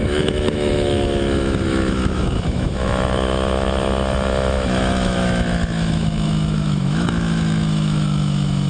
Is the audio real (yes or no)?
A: no